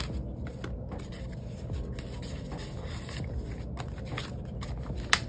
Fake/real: real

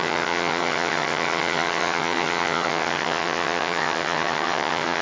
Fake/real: fake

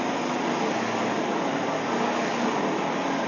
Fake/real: real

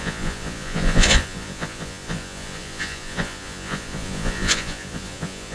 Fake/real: fake